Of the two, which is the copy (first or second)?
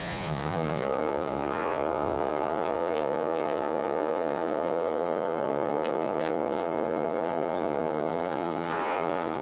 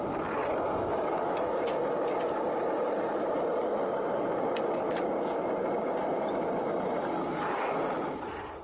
first